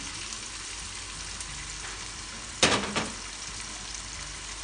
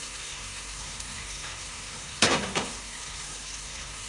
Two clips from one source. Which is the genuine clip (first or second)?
first